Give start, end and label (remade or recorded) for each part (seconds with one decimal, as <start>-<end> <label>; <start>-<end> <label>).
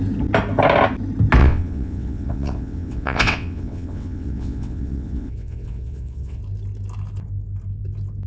0.0-1.4 recorded; 1.4-6.4 remade; 6.4-8.3 recorded